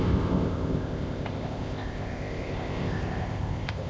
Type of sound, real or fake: fake